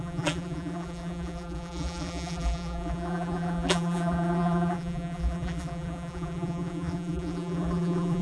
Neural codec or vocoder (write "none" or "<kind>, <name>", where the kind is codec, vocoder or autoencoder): vocoder, BigVGAN v2